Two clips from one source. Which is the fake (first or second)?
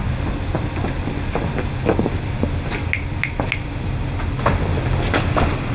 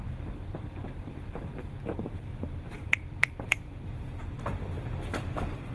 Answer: second